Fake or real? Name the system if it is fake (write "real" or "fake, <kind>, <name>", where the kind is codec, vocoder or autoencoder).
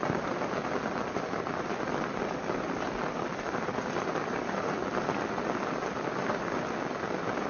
real